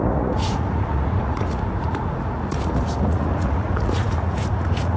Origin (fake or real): fake